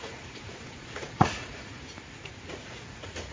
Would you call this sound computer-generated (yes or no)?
yes